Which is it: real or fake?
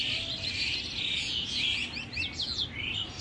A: real